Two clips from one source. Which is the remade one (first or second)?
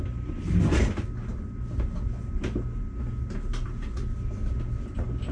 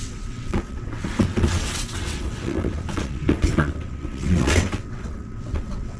second